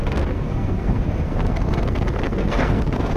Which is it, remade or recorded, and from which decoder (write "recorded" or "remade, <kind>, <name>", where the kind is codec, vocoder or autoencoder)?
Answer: remade, codec, SNAC